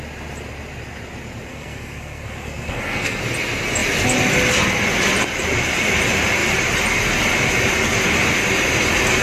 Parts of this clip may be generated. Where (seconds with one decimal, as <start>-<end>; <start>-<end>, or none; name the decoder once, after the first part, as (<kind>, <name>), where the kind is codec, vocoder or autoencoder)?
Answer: 1.5-3.2 (codec, SNAC)